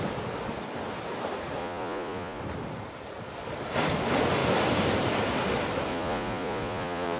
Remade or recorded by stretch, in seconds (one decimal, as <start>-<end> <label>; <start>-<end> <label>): 0.0-1.6 recorded; 1.6-2.4 remade; 2.4-5.9 recorded; 5.9-7.2 remade